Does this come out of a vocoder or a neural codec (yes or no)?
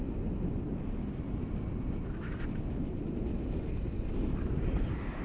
no